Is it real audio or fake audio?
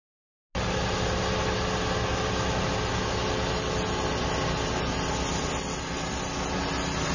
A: real